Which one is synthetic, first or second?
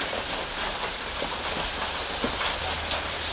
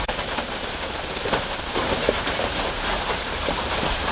second